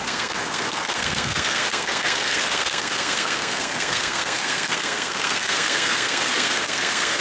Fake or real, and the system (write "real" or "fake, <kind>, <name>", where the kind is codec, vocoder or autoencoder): fake, codec, SNAC